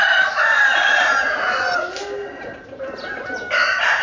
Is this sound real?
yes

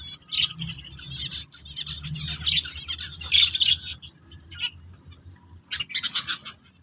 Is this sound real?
yes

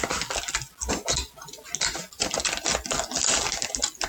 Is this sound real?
yes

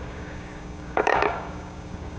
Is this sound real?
no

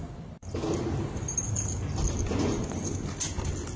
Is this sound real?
yes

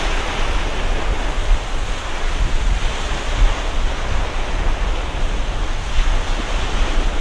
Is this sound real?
yes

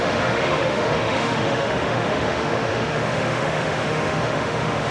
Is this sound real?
no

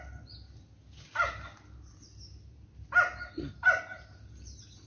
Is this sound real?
yes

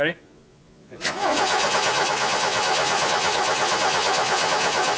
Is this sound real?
no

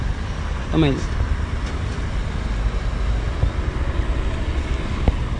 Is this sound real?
yes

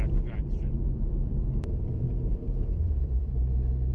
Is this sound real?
no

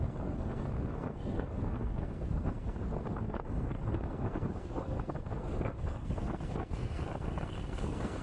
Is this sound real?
no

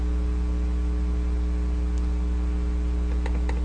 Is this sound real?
yes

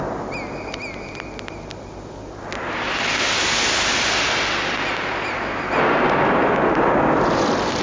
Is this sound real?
yes